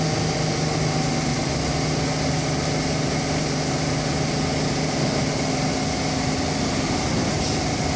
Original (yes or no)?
yes